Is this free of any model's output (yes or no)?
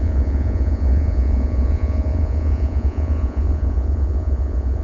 no